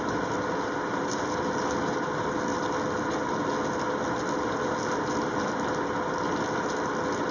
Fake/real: real